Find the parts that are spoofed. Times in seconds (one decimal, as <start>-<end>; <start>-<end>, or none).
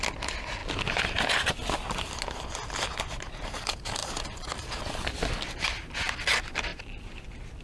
6.7-7.6